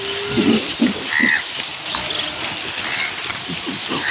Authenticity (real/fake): real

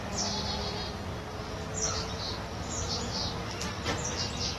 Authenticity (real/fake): real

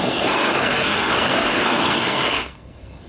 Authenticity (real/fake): fake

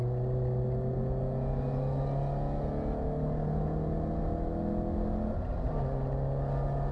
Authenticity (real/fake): real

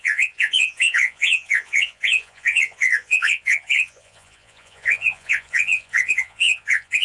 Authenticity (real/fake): fake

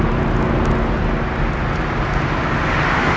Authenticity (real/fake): real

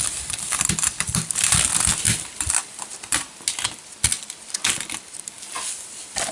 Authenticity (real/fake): real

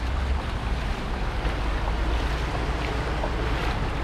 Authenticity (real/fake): real